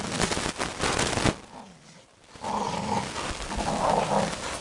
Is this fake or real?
real